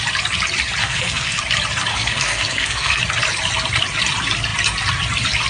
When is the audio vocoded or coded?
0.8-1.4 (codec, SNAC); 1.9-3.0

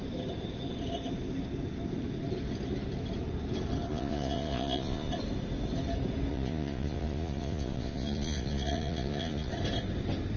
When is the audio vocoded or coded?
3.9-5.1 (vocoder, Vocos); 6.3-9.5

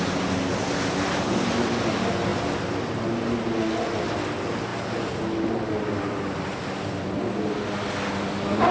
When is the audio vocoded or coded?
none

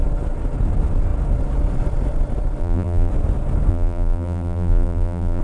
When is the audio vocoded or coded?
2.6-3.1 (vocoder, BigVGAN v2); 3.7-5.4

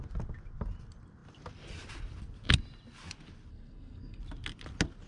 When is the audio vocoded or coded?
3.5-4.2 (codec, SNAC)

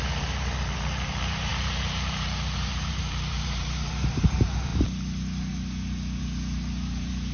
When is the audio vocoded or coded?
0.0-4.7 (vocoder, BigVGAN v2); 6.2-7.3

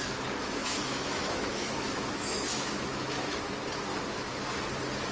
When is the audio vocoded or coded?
0.6-3.4 (autoencoder, DAC-VAE); 3.9-4.6